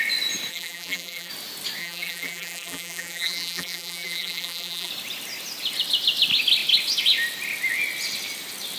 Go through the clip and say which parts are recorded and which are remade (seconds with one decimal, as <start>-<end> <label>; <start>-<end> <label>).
0.0-0.5 recorded; 0.5-1.3 remade; 1.3-1.8 recorded; 1.8-4.9 remade; 4.9-8.8 recorded